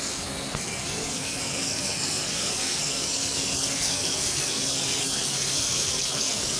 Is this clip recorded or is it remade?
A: remade